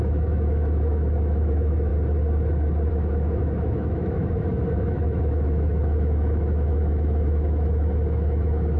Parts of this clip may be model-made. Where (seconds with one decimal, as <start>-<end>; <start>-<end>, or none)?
0.0-1.9; 2.9-8.8